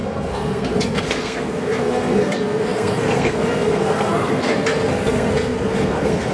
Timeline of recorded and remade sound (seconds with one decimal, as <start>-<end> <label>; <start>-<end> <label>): 0.0-6.3 remade